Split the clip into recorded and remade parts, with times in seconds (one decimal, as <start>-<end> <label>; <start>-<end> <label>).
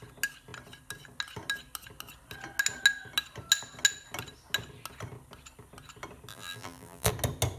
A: 0.0-6.3 recorded; 6.3-7.1 remade; 7.1-7.6 recorded